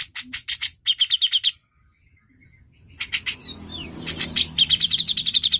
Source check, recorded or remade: recorded